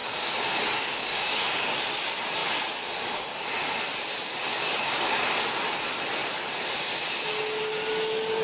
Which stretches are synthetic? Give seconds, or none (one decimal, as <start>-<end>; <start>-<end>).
0.0-1.8; 4.5-5.3